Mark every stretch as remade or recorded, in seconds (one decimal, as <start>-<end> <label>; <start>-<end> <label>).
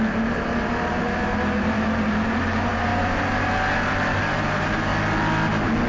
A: 0.0-2.9 remade; 2.9-4.2 recorded; 4.2-4.9 remade; 4.9-5.9 recorded